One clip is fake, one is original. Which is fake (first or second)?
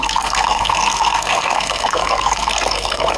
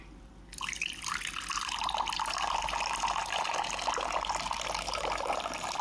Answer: first